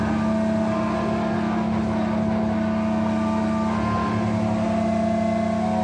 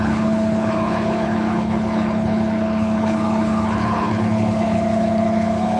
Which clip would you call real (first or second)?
first